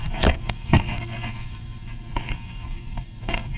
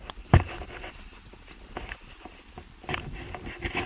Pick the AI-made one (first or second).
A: first